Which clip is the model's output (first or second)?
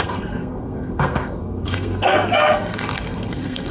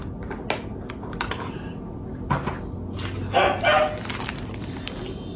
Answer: first